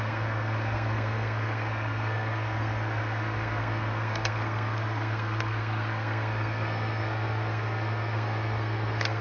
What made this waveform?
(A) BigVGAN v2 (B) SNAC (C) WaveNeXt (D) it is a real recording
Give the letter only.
B